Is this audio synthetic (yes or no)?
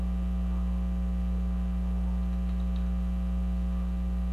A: no